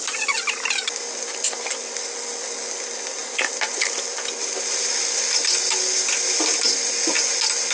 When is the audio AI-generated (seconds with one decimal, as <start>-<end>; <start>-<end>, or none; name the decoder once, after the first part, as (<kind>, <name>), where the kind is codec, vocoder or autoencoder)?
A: none